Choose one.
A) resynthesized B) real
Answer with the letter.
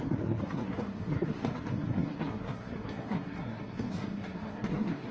A